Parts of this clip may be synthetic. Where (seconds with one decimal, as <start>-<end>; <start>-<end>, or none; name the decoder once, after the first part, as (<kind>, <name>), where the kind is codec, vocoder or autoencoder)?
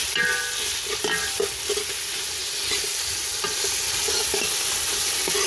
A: none